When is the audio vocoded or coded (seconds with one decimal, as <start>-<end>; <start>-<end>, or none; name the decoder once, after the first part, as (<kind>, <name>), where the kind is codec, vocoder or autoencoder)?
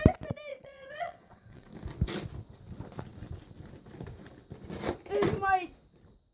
0.5-1.7 (vocoder, WaveNeXt)